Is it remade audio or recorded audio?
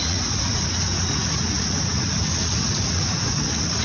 remade